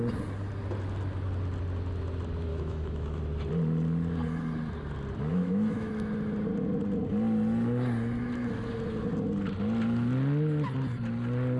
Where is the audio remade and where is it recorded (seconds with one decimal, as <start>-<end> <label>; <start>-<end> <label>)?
0.0-2.5 recorded; 2.5-3.2 remade; 3.2-5.3 recorded; 5.3-5.9 remade; 5.9-11.6 recorded